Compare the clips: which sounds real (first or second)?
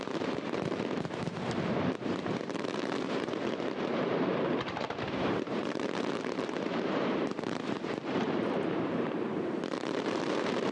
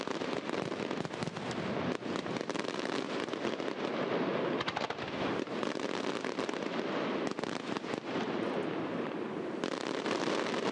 second